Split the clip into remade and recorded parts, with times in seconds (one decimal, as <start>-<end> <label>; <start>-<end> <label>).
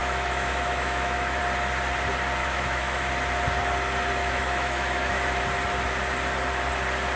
0.0-1.4 remade; 1.4-2.4 recorded; 2.4-3.1 remade; 3.1-4.2 recorded; 4.2-5.4 remade; 5.4-7.2 recorded